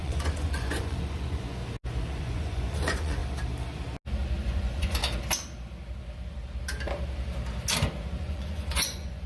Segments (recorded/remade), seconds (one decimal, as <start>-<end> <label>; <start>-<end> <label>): 0.0-1.6 remade; 1.6-2.2 recorded; 2.2-3.2 remade; 3.2-4.4 recorded; 4.4-5.0 remade; 5.0-8.2 recorded; 8.2-9.3 remade